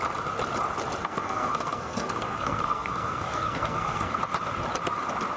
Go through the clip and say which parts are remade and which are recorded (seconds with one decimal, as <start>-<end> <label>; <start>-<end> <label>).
0.0-1.0 recorded; 1.0-4.2 remade; 4.2-5.4 recorded